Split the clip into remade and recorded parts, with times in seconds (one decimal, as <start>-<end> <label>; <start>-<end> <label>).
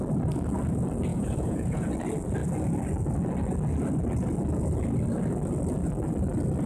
0.0-1.1 recorded; 1.1-1.9 remade; 1.9-6.7 recorded